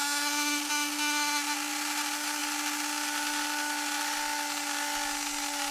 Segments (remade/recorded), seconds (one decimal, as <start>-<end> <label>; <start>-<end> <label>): 0.0-5.7 recorded